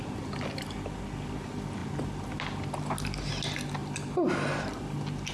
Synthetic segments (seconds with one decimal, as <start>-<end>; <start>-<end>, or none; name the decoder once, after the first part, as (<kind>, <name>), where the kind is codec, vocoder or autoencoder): none